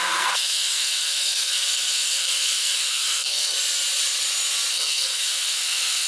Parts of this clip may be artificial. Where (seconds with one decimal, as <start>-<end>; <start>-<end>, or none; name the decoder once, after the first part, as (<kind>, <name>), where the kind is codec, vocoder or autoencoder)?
0.0-3.5 (codec, SNAC); 4.7-6.1